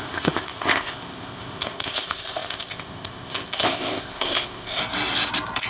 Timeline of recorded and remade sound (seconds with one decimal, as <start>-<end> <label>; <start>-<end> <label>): 0.0-4.8 remade; 4.8-5.7 recorded